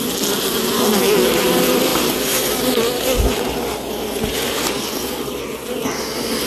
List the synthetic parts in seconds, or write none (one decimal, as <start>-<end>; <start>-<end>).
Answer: none